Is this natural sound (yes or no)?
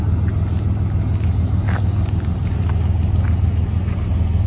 yes